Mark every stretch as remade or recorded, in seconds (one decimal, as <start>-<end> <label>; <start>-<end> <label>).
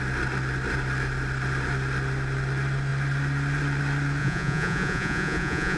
0.0-4.2 recorded; 4.2-5.8 remade